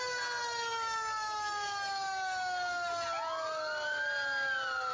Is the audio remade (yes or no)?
no